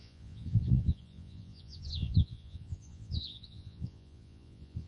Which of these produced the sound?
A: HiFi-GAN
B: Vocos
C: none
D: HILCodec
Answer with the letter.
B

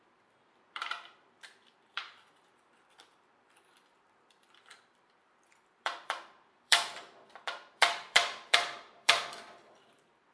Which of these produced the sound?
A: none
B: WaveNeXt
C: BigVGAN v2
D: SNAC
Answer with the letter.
C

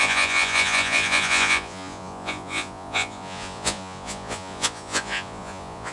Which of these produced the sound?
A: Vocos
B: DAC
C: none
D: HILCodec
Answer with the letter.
A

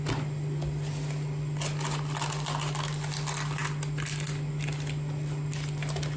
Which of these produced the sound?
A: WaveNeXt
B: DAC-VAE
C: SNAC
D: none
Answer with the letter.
D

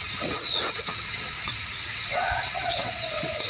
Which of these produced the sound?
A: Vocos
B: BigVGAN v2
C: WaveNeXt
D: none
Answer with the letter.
C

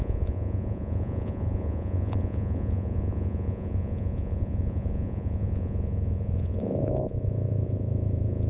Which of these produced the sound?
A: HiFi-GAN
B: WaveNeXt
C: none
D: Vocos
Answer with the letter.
D